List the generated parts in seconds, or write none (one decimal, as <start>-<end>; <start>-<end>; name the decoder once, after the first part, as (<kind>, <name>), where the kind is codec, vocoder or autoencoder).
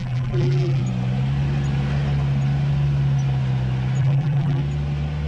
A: 0.0-0.8 (vocoder, BigVGAN v2); 4.0-4.6